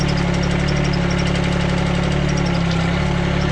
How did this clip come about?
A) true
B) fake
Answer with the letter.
A